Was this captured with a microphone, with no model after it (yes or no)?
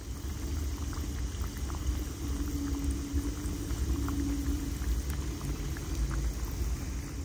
yes